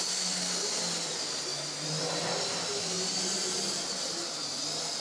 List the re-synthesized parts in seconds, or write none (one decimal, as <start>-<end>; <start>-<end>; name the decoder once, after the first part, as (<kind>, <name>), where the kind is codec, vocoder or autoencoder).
none